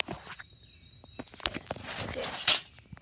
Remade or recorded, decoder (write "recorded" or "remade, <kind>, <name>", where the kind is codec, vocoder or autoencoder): recorded